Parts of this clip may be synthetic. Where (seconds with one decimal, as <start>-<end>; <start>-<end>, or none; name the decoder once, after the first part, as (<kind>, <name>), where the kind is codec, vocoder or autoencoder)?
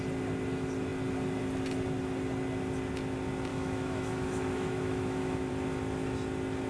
3.5-5.5 (autoencoder, DAC-VAE)